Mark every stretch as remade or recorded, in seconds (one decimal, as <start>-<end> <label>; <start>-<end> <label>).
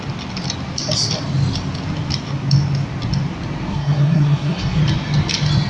0.0-3.7 recorded; 3.7-4.8 remade; 4.8-5.7 recorded